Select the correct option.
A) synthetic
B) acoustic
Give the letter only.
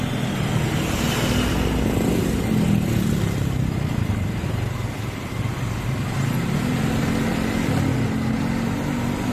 B